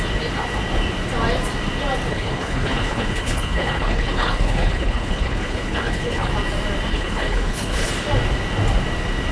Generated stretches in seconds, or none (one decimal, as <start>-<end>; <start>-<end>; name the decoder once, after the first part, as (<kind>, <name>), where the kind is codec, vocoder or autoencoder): 2.1-6.3 (codec, HILCodec); 6.9-7.9